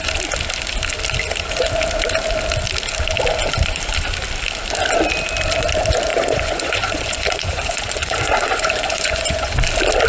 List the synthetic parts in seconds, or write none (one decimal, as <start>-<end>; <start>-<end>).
6.1-9.6